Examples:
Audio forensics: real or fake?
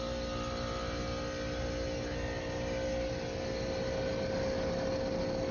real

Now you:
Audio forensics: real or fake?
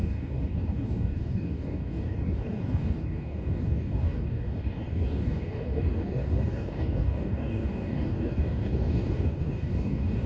fake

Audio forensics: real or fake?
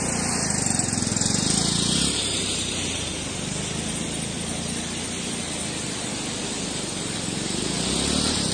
real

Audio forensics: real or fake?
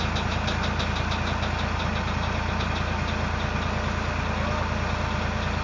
real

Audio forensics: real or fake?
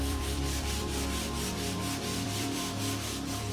fake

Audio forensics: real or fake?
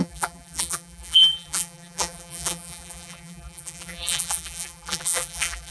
fake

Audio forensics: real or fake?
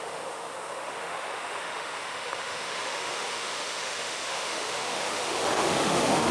fake